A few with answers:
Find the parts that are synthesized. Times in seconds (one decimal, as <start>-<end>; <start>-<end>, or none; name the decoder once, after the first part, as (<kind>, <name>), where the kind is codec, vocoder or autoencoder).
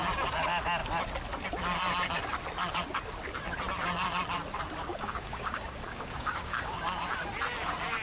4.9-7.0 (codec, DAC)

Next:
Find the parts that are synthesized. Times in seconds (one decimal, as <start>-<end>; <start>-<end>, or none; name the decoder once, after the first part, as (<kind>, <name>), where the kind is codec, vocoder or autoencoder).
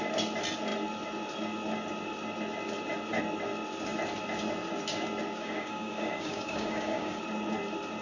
5.4-7.2 (codec, DAC)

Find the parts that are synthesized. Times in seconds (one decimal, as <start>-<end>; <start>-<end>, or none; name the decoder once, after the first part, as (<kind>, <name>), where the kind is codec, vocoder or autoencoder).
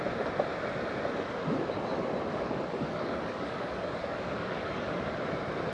2.3-4.9 (codec, DAC)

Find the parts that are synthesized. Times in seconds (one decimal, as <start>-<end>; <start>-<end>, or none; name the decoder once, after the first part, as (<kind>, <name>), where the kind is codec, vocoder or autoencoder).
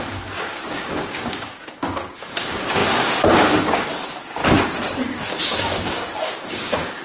0.0-4.4 (codec, DAC); 5.2-7.0